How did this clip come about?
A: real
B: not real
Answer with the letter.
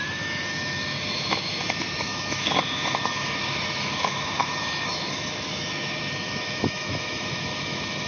B